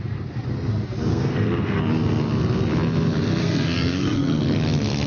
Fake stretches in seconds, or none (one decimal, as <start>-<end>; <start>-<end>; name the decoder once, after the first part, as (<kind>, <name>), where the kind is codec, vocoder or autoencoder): 1.1-1.8 (codec, SNAC); 3.4-4.4